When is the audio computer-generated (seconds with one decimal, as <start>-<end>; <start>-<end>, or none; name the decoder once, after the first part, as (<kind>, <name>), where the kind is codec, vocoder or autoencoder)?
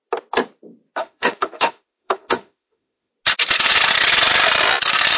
1.0-3.1 (autoencoder, DAC-VAE)